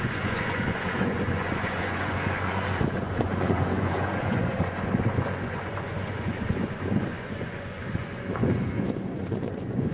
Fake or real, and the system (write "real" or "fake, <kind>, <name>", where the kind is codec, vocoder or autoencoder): fake, vocoder, Vocos